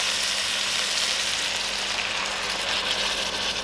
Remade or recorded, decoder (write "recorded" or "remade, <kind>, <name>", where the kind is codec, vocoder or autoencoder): recorded